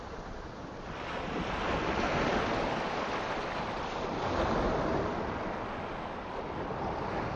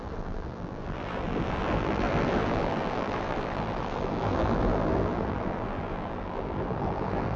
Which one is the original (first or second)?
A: first